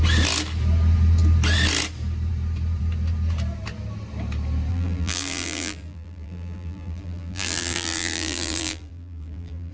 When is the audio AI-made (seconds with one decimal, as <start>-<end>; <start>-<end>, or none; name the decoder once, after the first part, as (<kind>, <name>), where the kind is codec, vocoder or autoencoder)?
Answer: 4.7-9.7 (vocoder, BigVGAN v2)